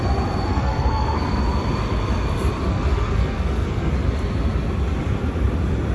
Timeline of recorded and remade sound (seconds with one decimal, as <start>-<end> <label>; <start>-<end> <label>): 0.0-0.5 recorded; 0.5-1.4 remade; 1.4-2.7 recorded; 2.7-3.9 remade; 3.9-5.9 recorded